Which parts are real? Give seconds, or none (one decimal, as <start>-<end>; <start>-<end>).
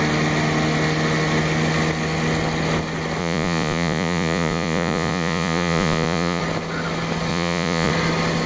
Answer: 0.0-3.2; 6.4-7.3; 7.9-8.5